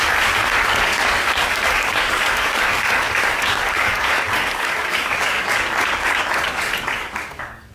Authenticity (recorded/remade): remade